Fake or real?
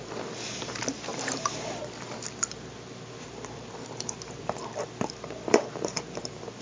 fake